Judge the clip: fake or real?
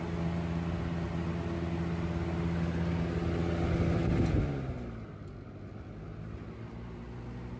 real